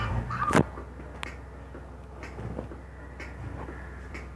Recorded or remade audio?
recorded